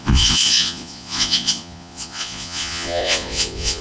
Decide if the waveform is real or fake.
fake